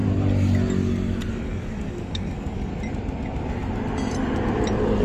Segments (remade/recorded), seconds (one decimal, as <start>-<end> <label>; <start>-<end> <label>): 0.0-1.3 recorded; 1.3-2.7 remade; 2.7-5.0 recorded